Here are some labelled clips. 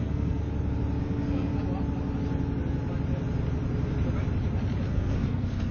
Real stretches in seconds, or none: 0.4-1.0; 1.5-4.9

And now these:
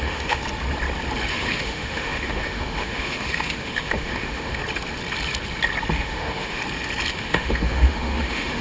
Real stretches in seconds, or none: 0.4-1.3; 4.6-5.9; 6.6-7.1

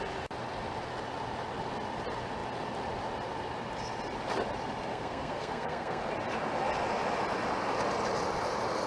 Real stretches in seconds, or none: 0.0-4.9; 6.0-8.9

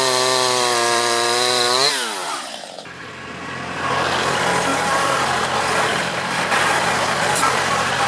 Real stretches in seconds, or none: 0.0-2.2; 3.1-4.7